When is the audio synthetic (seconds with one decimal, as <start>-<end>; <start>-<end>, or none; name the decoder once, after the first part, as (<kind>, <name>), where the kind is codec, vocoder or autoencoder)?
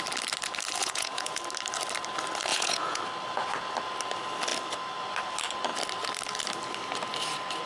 0.8-1.4 (vocoder, Vocos); 2.5-3.0